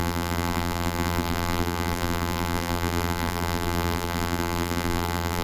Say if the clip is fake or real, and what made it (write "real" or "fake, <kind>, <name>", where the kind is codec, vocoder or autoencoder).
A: fake, vocoder, BigVGAN v2